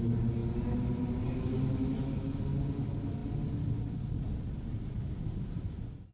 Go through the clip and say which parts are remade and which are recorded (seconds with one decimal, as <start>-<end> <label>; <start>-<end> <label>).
0.0-6.1 recorded